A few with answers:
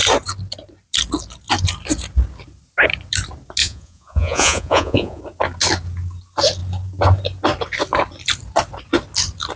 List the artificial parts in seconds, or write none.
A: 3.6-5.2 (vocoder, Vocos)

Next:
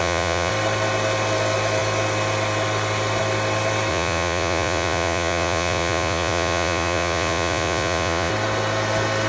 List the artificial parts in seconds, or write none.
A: 0.0-0.5 (vocoder, Vocos); 3.9-8.3

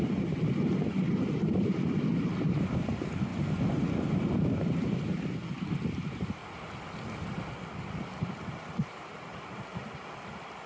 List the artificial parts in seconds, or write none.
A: none

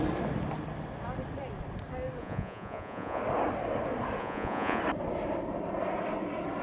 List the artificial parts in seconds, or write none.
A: 2.2-3.2 (vocoder, Vocos); 4.2-4.8

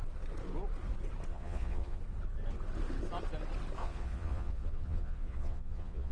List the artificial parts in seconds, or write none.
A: 1.3-2.0 (vocoder, Vocos); 3.8-6.1

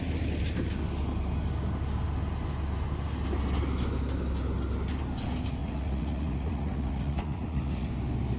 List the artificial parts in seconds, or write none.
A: 5.6-7.9 (vocoder, Vocos)

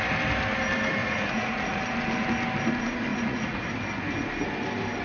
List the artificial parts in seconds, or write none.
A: 1.0-1.8 (vocoder, Vocos); 3.1-3.7

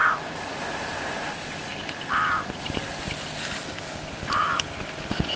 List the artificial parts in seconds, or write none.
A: 0.0-0.6 (vocoder, Vocos)